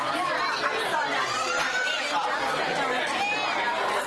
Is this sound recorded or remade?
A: recorded